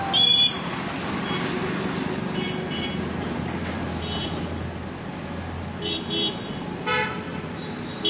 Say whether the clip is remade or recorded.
recorded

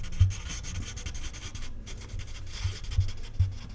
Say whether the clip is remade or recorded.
recorded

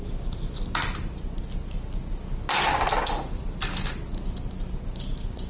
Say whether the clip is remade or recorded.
recorded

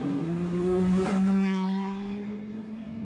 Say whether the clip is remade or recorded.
remade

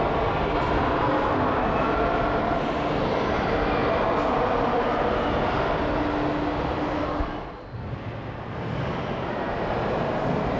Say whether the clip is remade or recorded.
recorded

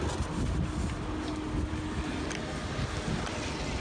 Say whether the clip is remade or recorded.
recorded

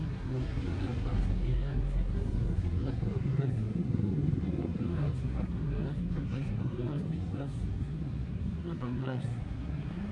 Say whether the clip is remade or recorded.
remade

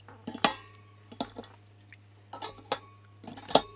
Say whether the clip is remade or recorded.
recorded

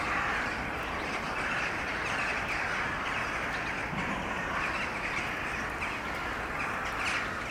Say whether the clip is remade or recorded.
recorded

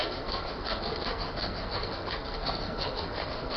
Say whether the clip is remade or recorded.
remade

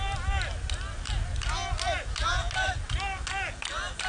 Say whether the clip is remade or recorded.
recorded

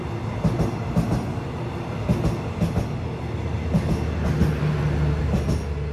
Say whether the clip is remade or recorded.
recorded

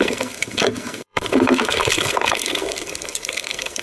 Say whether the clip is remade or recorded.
remade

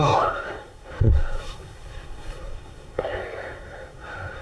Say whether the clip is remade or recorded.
remade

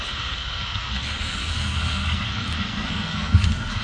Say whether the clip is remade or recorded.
remade